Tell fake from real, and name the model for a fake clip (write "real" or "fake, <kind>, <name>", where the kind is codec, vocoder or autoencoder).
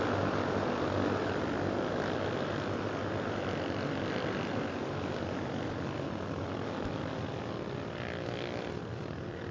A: real